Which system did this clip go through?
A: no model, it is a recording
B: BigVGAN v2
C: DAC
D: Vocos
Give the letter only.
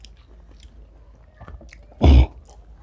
A